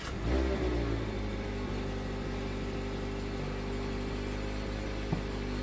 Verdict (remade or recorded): recorded